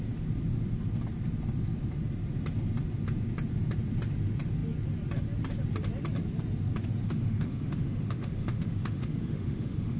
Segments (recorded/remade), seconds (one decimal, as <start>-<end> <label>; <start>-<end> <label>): 0.0-7.0 recorded; 7.0-10.0 remade